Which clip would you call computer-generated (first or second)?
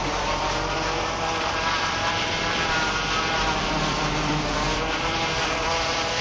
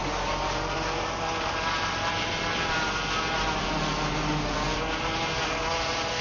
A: first